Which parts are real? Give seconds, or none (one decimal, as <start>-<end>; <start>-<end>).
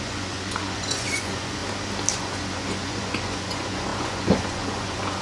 1.6-2.1